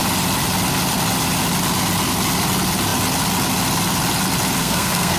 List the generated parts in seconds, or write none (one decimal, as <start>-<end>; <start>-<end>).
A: 4.6-5.2